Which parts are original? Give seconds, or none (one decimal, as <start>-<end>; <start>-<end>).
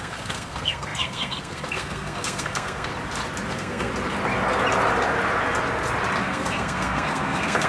2.9-3.5; 3.9-6.2